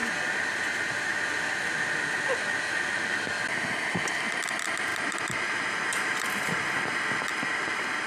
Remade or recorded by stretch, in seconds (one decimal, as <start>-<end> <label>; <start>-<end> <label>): 0.0-4.9 recorded; 4.9-6.7 remade; 6.7-7.3 recorded; 7.3-8.1 remade